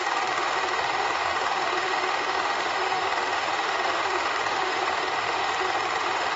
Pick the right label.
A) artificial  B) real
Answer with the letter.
A